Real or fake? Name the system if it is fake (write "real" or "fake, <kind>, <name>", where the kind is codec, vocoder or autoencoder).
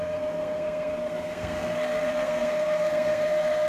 fake, codec, SNAC